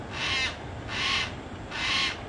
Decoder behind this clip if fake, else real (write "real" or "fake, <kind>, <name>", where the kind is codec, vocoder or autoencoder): real